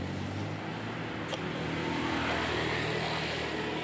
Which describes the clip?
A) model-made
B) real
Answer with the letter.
B